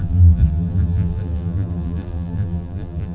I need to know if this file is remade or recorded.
remade